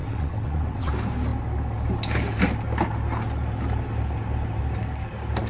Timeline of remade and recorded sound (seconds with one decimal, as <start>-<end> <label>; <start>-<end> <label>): 0.0-0.9 remade; 0.9-5.5 recorded